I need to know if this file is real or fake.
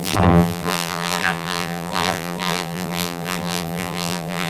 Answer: fake